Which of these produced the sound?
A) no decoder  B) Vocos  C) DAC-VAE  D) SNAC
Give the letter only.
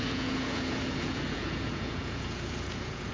B